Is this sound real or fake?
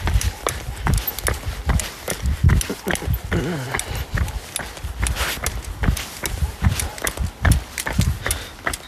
real